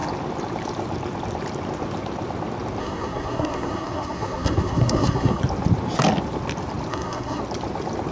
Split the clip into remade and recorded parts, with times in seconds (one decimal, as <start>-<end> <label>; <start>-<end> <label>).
0.0-2.8 recorded; 2.8-5.4 remade; 5.4-6.9 recorded; 6.9-7.4 remade; 7.4-8.1 recorded